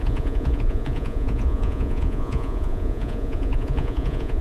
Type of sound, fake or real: fake